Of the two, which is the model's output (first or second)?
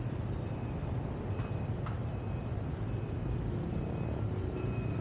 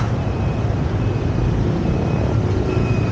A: second